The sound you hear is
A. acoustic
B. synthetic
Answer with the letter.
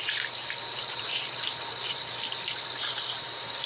B